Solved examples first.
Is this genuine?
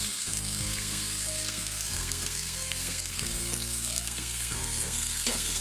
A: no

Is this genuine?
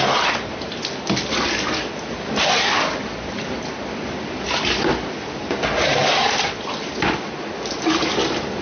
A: yes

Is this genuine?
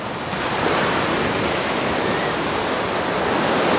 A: yes